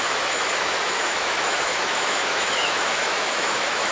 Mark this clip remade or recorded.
remade